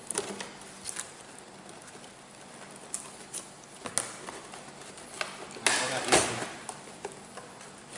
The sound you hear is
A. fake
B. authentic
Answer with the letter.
B